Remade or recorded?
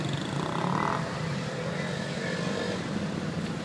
recorded